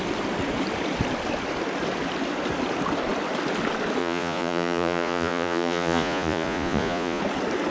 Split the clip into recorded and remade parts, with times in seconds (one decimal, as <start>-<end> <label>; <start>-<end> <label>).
0.0-4.0 recorded; 4.0-7.2 remade; 7.2-7.7 recorded